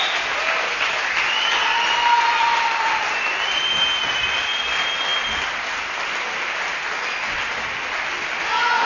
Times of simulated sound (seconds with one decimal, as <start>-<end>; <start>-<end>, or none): none